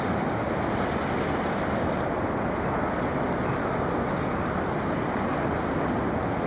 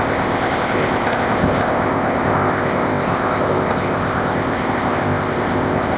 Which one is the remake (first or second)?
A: second